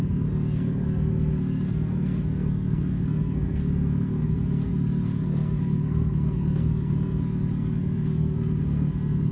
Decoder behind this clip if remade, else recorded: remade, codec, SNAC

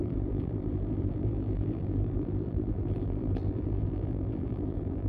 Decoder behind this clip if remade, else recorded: remade, vocoder, BigVGAN v2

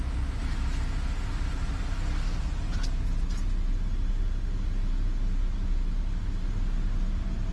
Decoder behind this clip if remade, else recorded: recorded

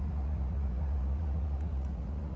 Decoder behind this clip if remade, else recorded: remade, vocoder, Vocos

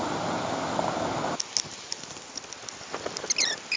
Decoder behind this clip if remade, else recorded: recorded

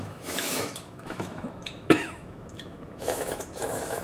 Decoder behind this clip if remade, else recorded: remade, autoencoder, DAC-VAE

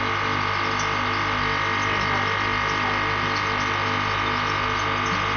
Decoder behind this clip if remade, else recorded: recorded